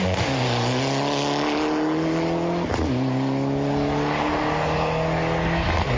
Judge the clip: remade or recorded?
recorded